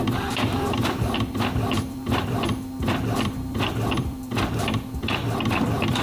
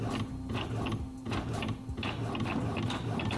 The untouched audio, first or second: second